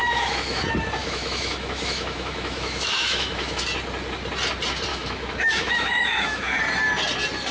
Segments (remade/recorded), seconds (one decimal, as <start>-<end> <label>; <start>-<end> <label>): 0.0-0.6 remade; 0.6-1.0 recorded; 1.0-3.6 remade; 3.6-4.9 recorded; 4.9-6.6 remade; 6.6-7.5 recorded